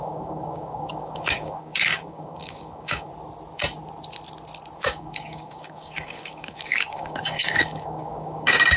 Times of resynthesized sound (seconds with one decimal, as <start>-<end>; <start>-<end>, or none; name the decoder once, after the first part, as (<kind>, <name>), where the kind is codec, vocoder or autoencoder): 0.0-3.1 (codec, DAC); 4.8-8.8